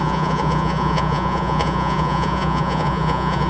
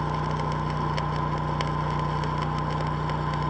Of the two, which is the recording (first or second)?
second